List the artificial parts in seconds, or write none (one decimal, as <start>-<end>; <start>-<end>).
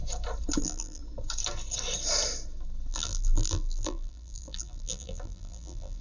0.6-1.0; 2.9-6.0